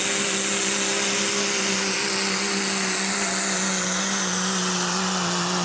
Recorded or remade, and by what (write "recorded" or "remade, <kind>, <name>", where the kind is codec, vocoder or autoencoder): recorded